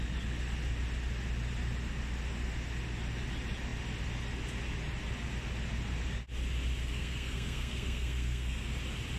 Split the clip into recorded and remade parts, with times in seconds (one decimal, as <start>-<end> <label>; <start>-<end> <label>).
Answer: 0.0-6.8 recorded; 6.8-8.7 remade; 8.7-9.2 recorded